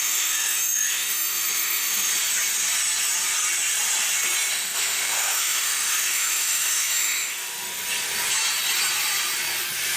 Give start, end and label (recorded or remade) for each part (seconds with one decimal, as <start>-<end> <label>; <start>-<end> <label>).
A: 0.0-2.1 remade; 2.1-4.5 recorded; 4.5-7.7 remade; 7.7-10.0 recorded